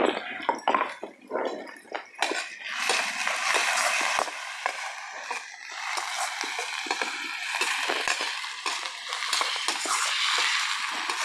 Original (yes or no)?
yes